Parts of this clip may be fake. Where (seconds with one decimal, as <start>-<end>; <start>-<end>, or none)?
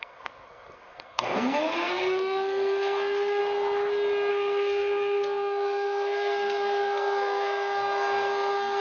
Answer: 0.0-3.4; 4.3-8.8